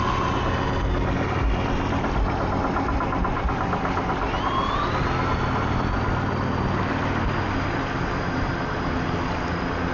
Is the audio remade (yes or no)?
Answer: no